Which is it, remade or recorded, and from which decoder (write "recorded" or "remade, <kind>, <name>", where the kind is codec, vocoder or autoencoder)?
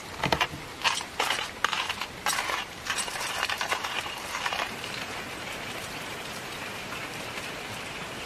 remade, vocoder, BigVGAN v2